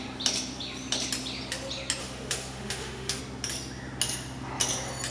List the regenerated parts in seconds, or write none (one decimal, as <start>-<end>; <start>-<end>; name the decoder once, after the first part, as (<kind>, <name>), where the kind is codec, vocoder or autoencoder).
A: 2.0-3.2 (autoencoder, DAC-VAE)